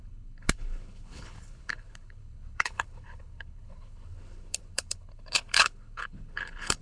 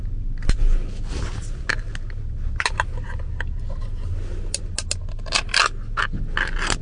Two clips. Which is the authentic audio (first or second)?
second